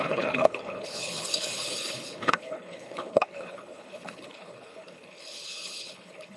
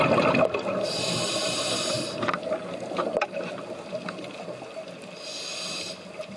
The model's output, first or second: first